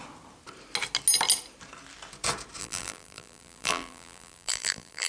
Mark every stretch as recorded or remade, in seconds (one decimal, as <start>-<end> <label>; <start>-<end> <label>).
0.0-2.6 recorded; 2.6-5.1 remade